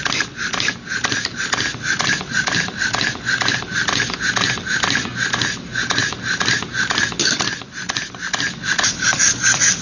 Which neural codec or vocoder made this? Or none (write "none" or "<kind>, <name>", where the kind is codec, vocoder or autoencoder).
none